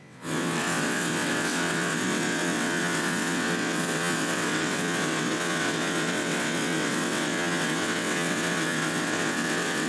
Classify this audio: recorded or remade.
remade